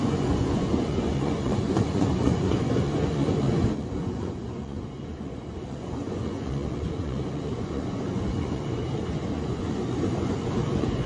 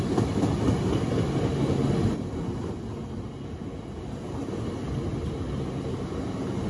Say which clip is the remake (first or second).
first